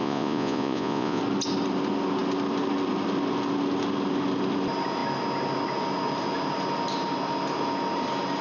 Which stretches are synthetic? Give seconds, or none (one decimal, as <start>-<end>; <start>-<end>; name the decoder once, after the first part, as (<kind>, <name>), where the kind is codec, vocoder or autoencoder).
0.0-1.2 (vocoder, Vocos)